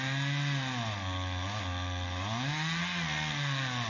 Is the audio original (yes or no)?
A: yes